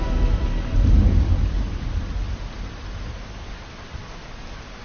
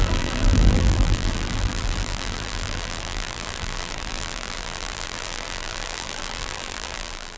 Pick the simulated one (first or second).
second